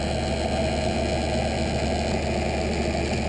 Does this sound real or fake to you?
real